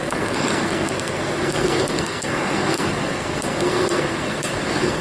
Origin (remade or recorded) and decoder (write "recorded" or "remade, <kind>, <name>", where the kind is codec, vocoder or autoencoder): remade, codec, SNAC